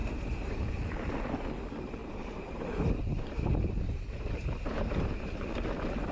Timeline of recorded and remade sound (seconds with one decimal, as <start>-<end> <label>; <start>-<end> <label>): 0.0-0.6 remade; 0.6-2.0 recorded; 2.0-2.6 remade; 2.6-3.1 recorded; 3.1-5.5 remade; 5.5-6.1 recorded